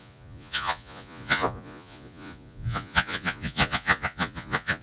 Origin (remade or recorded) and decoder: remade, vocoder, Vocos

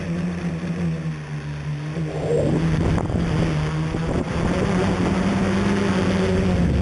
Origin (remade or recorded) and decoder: recorded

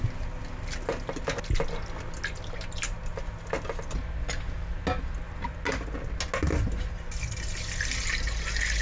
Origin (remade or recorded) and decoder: recorded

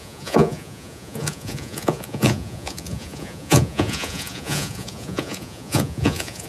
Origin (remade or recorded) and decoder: remade, vocoder, Vocos